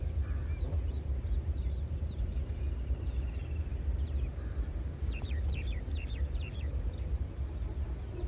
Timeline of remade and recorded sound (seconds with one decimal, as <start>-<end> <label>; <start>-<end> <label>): 0.0-8.3 remade